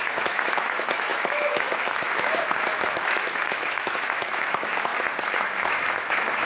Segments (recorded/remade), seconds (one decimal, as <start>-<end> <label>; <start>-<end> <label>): 0.0-4.9 remade; 4.9-5.4 recorded; 5.4-6.5 remade